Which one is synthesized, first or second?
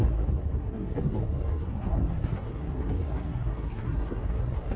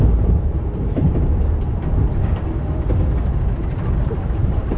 first